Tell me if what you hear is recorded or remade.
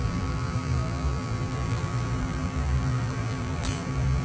remade